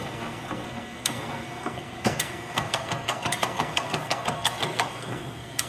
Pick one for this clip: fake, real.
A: fake